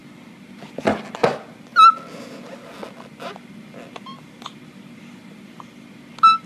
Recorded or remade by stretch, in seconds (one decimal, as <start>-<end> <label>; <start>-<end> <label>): 0.0-6.5 recorded